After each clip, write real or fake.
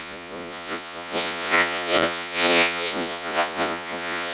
fake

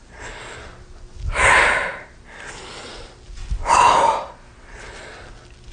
real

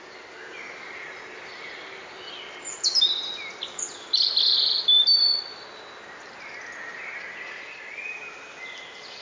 real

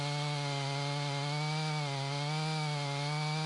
real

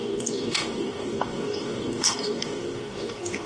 fake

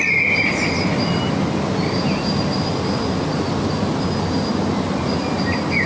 real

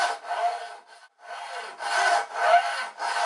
real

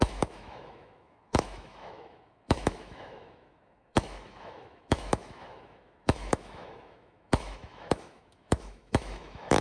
fake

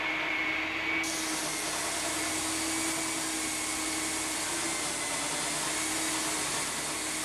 real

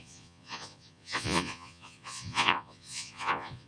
fake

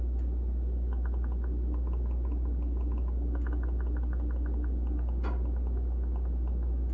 real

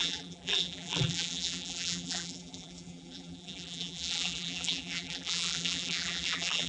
fake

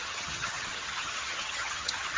fake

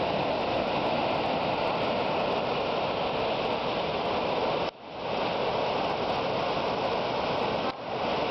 real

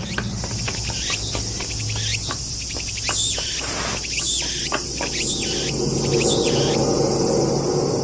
real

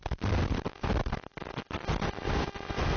real